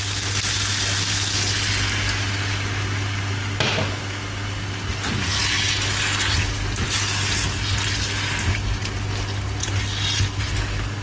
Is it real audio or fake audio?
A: real